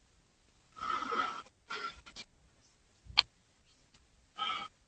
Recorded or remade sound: recorded